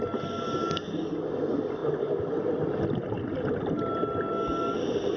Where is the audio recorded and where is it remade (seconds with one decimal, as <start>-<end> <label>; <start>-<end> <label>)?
0.0-5.2 recorded